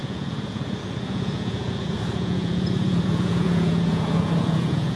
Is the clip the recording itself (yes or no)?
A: no